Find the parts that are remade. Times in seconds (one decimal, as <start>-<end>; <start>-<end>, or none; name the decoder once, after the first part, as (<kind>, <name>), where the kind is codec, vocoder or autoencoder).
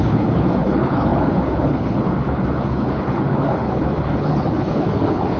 0.0-5.4 (codec, HILCodec)